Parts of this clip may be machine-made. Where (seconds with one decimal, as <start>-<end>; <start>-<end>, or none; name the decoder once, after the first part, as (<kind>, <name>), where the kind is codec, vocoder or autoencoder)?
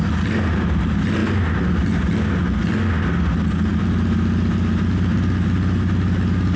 none